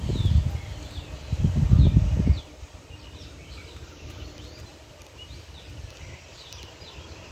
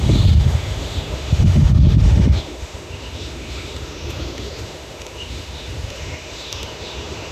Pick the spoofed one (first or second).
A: second